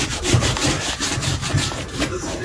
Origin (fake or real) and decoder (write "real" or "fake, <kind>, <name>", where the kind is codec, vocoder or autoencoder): fake, vocoder, BigVGAN v2